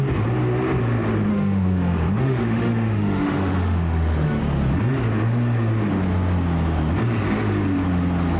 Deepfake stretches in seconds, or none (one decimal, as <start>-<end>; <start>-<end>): 1.3-4.4

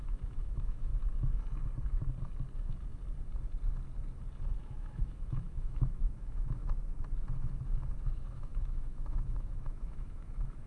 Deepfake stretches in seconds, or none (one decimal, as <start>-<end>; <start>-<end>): 0.0-0.9; 4.6-6.6; 8.1-10.7